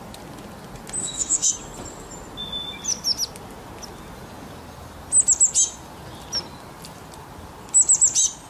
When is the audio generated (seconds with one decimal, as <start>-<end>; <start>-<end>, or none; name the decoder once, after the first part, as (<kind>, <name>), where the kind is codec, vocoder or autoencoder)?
1.0-1.5 (autoencoder, DAC-VAE)